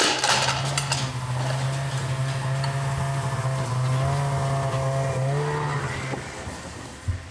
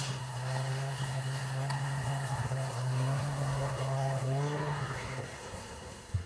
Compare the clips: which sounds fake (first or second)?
second